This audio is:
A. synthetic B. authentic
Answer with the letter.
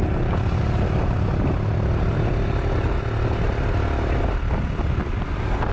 B